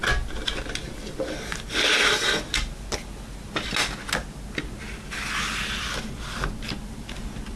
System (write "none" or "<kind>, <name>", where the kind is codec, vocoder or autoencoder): none